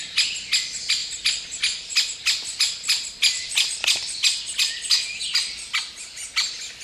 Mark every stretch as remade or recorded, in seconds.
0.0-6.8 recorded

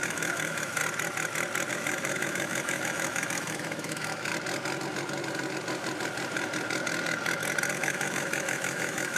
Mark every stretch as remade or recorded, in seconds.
0.0-0.8 remade; 0.8-1.7 recorded; 1.7-4.3 remade; 4.3-7.7 recorded; 7.7-9.2 remade

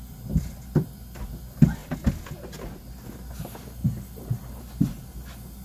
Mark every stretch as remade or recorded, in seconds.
0.0-5.6 recorded